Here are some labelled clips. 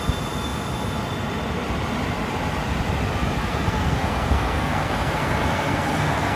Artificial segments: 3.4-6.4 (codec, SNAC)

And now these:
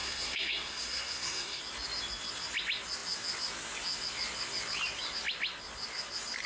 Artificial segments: 0.0-1.6 (codec, SNAC)

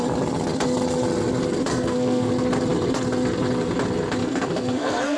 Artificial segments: 1.7-2.3 (codec, SNAC); 4.2-5.2